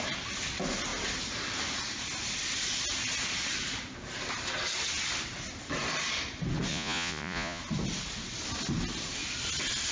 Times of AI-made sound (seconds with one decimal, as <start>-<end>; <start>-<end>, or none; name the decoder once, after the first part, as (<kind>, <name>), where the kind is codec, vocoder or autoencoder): 6.7-7.6 (vocoder, Vocos)